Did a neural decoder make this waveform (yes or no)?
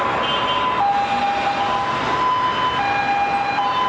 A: no